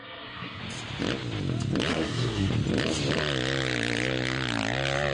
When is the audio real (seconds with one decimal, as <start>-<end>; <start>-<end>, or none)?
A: 0.6-1.9; 2.5-5.1